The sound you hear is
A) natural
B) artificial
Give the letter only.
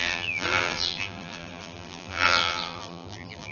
B